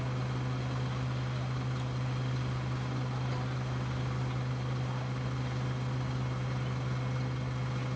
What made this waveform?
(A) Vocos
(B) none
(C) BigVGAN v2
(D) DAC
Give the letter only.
B